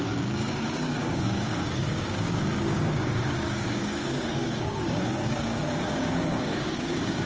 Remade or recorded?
remade